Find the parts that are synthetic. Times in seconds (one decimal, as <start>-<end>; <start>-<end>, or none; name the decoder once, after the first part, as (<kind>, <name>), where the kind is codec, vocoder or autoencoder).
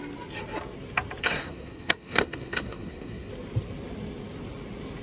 1.2-3.3 (codec, SNAC)